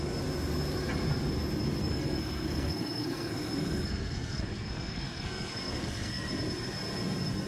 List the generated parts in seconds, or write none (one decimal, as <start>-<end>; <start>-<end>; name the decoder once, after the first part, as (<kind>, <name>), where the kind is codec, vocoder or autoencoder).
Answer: 1.8-6.3 (codec, SNAC)